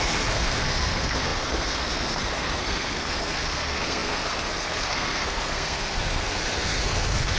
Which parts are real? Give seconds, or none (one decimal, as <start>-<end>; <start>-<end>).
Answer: none